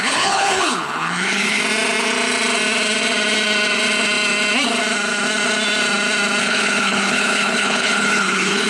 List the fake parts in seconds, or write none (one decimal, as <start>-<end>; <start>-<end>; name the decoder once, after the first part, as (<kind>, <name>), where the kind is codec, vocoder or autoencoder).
0.0-1.6 (codec, HILCodec); 6.4-8.7